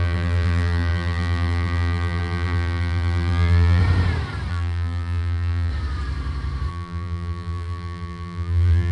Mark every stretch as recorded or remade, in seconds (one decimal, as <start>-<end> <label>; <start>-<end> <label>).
0.0-3.8 remade; 3.8-4.5 recorded; 4.5-5.7 remade; 5.7-6.7 recorded; 6.7-8.9 remade